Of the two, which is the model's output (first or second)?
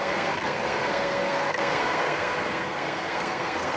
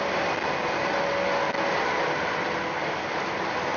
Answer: first